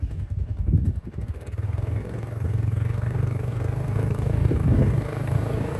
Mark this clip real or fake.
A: fake